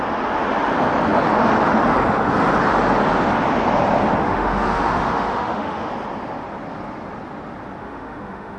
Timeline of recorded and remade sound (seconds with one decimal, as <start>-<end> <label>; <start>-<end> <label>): 0.0-4.2 recorded; 4.2-5.9 remade; 5.9-7.8 recorded; 7.8-8.6 remade